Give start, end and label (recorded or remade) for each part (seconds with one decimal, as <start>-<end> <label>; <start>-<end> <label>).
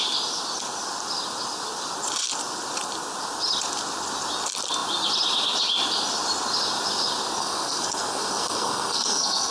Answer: 0.0-7.4 recorded; 7.4-9.5 remade